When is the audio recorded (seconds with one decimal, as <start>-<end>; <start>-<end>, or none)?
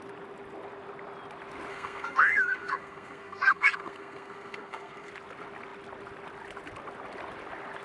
0.0-1.7; 5.1-7.8